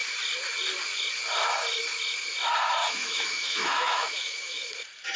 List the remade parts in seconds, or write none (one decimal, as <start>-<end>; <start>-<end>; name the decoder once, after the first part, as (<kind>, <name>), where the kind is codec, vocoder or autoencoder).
2.8-4.7 (autoencoder, DAC-VAE)